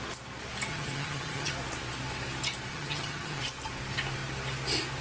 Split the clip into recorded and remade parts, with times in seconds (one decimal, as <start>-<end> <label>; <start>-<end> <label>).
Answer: 0.0-0.7 recorded; 0.7-1.5 remade; 1.5-2.7 recorded; 2.7-3.4 remade; 3.4-5.0 recorded